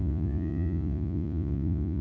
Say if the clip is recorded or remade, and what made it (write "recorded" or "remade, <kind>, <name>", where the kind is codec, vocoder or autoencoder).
remade, vocoder, Vocos